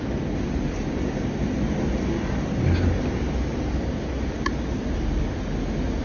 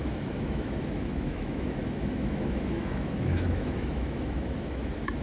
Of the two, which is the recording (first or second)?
first